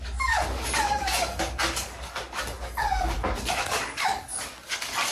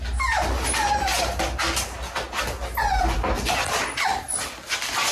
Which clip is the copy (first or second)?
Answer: first